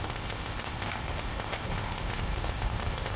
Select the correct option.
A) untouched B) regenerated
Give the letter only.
B